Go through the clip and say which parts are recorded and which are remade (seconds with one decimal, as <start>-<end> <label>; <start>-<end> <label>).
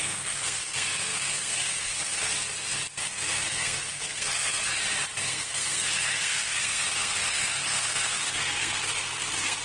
0.0-2.3 remade; 2.3-3.0 recorded; 3.0-4.6 remade; 4.6-5.3 recorded; 5.3-9.6 remade